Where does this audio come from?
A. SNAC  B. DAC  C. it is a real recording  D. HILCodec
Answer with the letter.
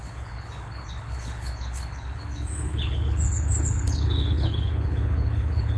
D